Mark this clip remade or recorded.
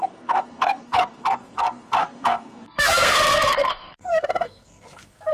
remade